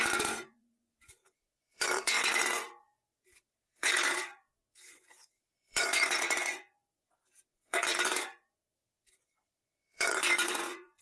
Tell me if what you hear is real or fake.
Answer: fake